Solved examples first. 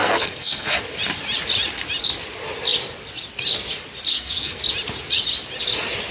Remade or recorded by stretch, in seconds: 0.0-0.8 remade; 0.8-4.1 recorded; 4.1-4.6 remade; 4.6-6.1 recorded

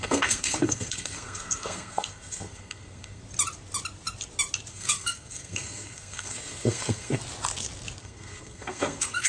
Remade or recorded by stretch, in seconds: 0.0-3.2 remade; 3.2-4.7 recorded; 4.7-7.2 remade; 7.2-8.0 recorded; 8.0-9.3 remade

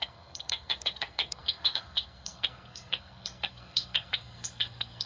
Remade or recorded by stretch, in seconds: 0.0-5.1 remade